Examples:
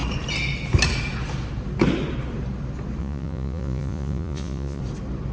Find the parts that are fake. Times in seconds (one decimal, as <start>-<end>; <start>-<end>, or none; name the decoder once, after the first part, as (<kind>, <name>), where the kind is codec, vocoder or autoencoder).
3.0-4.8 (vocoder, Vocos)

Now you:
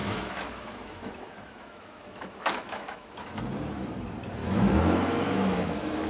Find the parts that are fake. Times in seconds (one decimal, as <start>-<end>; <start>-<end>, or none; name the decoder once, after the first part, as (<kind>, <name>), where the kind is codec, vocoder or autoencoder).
0.0-3.4 (autoencoder, DAC-VAE); 4.4-6.1

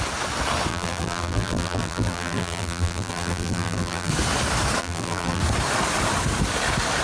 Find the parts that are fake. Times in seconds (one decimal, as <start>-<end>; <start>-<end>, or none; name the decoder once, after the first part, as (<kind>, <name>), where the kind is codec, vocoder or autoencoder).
0.7-4.1 (vocoder, BigVGAN v2); 4.8-5.4

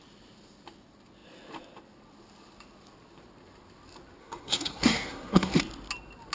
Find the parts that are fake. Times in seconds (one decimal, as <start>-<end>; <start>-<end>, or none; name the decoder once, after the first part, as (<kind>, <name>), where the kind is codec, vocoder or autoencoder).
4.2-5.6 (codec, SNAC)

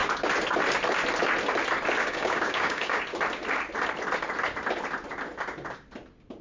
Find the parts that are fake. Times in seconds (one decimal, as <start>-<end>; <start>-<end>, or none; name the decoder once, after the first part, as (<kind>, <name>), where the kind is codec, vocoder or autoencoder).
2.0-3.0 (codec, DAC)

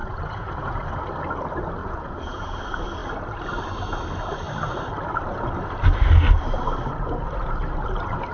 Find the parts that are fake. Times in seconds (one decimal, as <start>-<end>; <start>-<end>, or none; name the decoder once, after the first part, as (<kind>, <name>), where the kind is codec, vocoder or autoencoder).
0.0-0.9 (vocoder, Vocos); 1.8-2.6

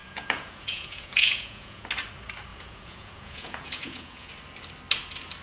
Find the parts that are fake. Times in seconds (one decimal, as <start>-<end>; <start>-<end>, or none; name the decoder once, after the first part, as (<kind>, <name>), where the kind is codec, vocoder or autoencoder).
0.0-1.9 (vocoder, Vocos); 2.5-4.3

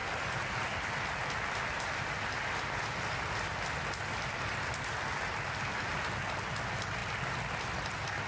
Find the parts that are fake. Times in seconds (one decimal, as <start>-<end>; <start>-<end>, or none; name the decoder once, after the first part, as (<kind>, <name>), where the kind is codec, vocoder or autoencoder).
none